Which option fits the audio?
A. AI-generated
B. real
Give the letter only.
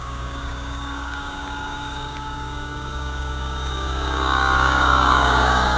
A